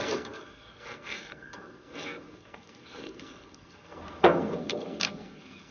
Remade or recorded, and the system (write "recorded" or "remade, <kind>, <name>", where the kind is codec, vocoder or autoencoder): remade, codec, SNAC